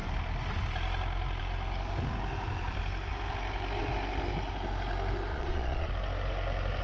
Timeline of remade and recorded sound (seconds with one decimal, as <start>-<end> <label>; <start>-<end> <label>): 0.0-5.3 recorded; 5.3-5.9 remade; 5.9-6.8 recorded